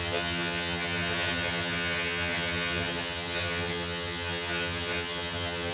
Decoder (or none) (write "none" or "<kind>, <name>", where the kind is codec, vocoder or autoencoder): vocoder, HiFi-GAN